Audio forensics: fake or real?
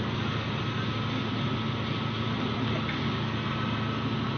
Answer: real